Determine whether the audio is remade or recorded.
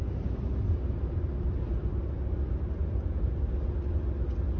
recorded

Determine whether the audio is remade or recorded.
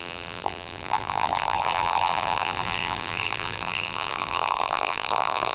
remade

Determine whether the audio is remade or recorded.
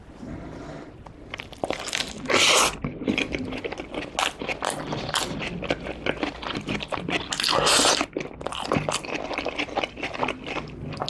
recorded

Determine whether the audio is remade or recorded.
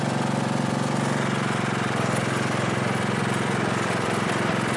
remade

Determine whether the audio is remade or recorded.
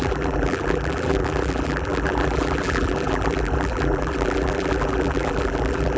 remade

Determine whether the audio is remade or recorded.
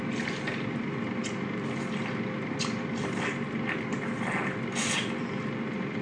recorded